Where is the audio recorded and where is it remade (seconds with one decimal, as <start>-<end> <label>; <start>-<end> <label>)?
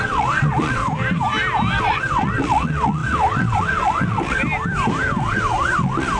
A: 0.0-0.8 remade; 0.8-1.8 recorded; 1.8-4.4 remade; 4.4-5.2 recorded; 5.2-6.2 remade